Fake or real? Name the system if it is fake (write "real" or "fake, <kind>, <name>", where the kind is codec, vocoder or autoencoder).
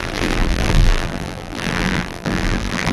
fake, vocoder, BigVGAN v2